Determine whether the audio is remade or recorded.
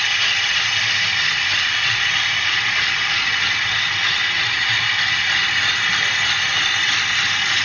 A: recorded